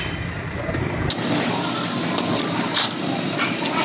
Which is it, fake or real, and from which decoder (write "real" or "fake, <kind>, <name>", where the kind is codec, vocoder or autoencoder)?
real